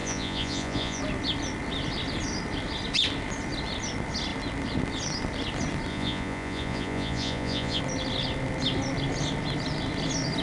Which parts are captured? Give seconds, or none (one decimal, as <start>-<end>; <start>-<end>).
1.0-5.9; 7.8-10.4